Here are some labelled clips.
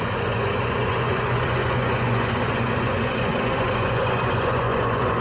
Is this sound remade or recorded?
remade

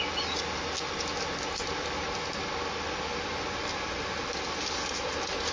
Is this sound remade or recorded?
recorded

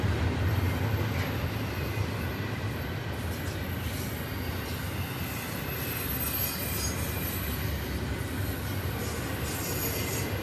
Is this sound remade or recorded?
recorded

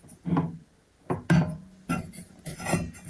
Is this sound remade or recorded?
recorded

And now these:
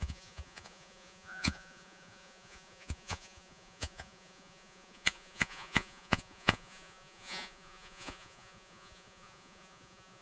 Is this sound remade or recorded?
remade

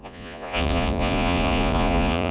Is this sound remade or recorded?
remade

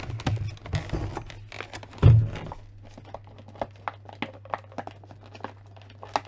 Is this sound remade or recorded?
recorded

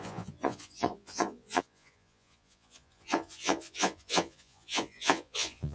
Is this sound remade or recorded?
remade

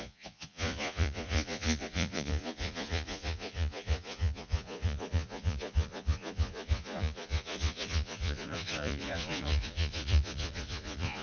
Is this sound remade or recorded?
remade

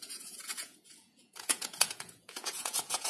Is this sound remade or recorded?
remade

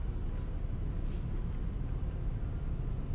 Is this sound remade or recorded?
recorded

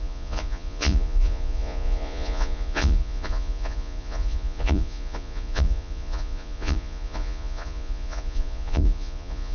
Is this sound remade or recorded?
remade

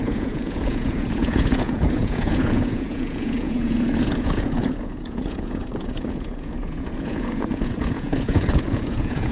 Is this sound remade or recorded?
remade